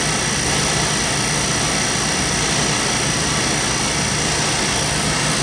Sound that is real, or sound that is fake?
real